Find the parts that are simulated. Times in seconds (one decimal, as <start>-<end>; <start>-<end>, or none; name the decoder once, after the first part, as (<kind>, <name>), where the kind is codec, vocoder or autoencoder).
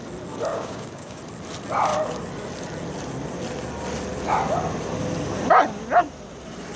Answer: 0.5-1.2 (codec, DAC)